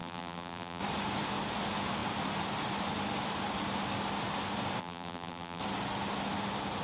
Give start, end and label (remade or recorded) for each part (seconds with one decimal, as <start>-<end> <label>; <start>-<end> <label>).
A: 0.0-0.8 remade; 0.8-4.8 recorded; 4.8-5.6 remade; 5.6-6.8 recorded